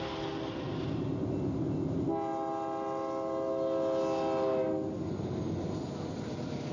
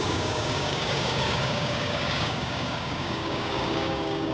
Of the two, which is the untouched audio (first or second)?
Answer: first